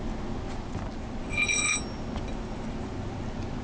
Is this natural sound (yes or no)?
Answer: yes